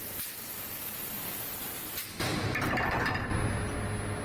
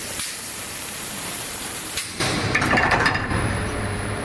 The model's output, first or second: second